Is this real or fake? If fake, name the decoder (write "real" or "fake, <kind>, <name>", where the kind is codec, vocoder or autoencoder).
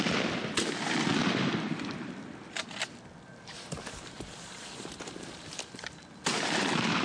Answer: real